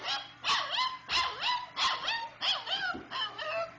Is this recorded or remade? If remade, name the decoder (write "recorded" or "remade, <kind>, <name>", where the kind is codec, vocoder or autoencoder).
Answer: recorded